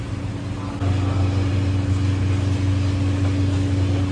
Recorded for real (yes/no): yes